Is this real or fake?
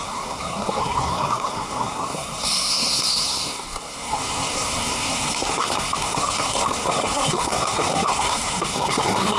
fake